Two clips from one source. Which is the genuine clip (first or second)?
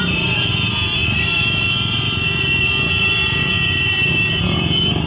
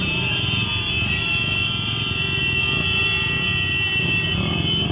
second